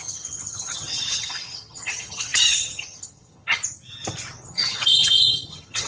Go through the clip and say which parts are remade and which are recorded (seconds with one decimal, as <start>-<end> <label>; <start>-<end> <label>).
0.0-3.6 remade; 3.6-4.5 recorded; 4.5-5.9 remade

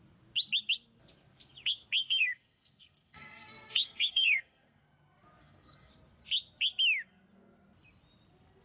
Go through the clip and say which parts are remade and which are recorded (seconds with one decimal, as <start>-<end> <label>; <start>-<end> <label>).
0.0-2.0 recorded; 2.0-4.8 remade; 4.8-5.4 recorded; 5.4-5.9 remade; 5.9-8.6 recorded

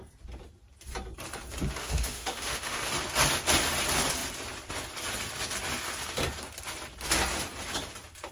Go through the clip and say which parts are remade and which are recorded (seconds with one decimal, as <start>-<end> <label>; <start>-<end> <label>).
0.0-1.8 recorded; 1.8-2.9 remade; 2.9-8.3 recorded

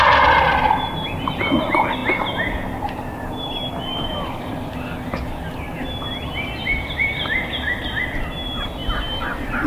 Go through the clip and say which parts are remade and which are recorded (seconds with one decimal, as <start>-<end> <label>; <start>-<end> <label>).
0.0-9.7 recorded